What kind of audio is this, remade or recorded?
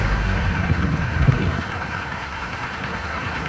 remade